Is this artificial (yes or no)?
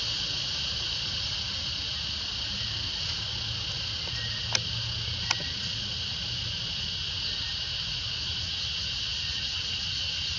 no